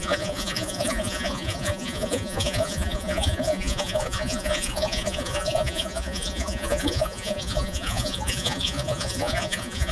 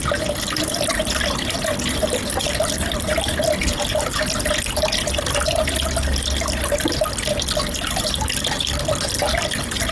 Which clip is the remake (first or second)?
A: first